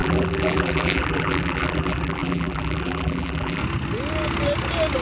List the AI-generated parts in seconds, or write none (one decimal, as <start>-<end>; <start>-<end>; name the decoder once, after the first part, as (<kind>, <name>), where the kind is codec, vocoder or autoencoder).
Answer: 0.0-3.6 (vocoder, BigVGAN v2)